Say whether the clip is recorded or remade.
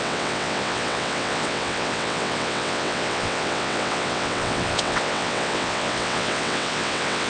remade